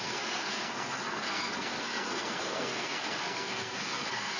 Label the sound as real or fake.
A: fake